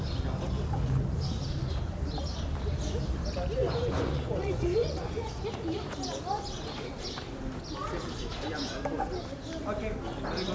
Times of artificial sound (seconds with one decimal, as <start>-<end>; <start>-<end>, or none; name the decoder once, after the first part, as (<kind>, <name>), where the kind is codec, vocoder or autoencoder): 3.6-5.3 (vocoder, Vocos)